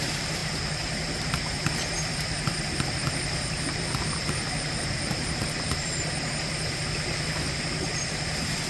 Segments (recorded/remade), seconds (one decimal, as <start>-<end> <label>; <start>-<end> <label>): 0.0-8.7 remade